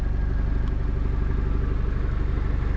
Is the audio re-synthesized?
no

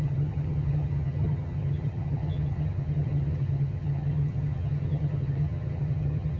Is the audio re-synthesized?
yes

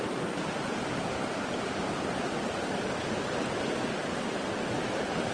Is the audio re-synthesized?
no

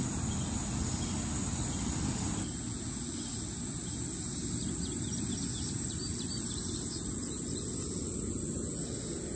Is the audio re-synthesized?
no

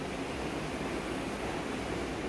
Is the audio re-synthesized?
no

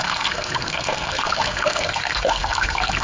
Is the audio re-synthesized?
yes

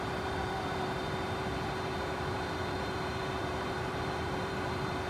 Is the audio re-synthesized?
yes